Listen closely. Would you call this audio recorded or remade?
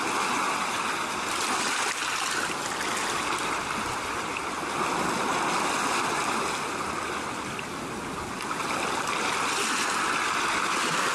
recorded